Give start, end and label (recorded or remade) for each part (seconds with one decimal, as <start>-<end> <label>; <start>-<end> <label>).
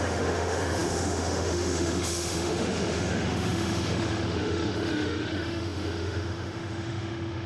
0.0-7.5 remade